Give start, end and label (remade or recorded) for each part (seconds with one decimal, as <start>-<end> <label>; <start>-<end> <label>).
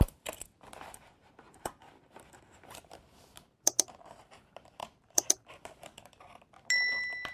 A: 0.0-1.2 recorded; 1.2-1.7 remade; 1.7-4.8 recorded; 4.8-5.5 remade; 5.5-7.3 recorded